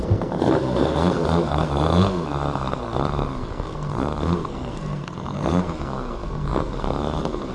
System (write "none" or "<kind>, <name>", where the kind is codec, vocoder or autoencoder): codec, SNAC